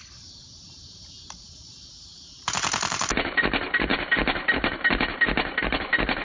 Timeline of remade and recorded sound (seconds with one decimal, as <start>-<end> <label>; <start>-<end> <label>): 0.0-3.9 remade; 3.9-5.6 recorded; 5.6-6.2 remade

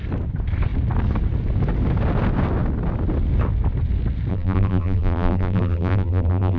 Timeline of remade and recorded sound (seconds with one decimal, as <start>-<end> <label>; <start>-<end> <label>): 0.0-4.3 recorded; 4.3-6.6 remade

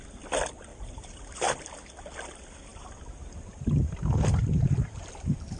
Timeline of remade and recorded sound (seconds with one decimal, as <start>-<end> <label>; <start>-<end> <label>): 0.0-0.7 recorded; 0.7-1.6 remade; 1.6-2.7 recorded; 2.7-4.4 remade; 4.4-5.6 recorded

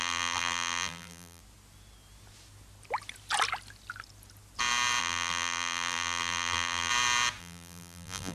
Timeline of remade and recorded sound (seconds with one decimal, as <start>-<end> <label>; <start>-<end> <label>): 0.0-1.4 remade; 1.4-5.0 recorded; 5.0-6.9 remade; 6.9-7.4 recorded; 7.4-8.3 remade

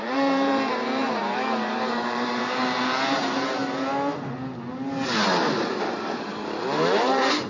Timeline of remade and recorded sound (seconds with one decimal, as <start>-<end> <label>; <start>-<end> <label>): 0.0-3.6 remade; 3.6-5.7 recorded; 5.7-6.3 remade; 6.3-7.0 recorded; 7.0-7.5 remade

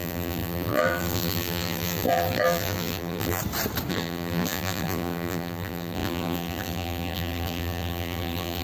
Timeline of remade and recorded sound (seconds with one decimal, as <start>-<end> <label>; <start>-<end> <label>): 0.0-3.4 remade; 3.4-3.9 recorded; 3.9-8.6 remade

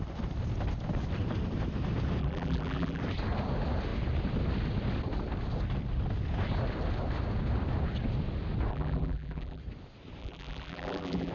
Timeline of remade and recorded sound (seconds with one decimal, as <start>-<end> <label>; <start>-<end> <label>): 0.0-2.2 recorded; 2.2-3.0 remade; 3.0-8.7 recorded; 8.7-9.6 remade; 9.6-10.2 recorded; 10.2-11.3 remade